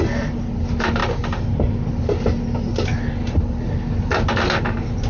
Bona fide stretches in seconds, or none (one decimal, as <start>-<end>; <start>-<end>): 0.0-5.1